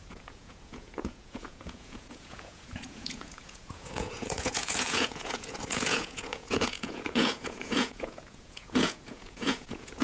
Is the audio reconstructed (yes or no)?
yes